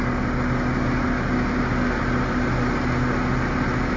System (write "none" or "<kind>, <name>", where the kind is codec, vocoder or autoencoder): none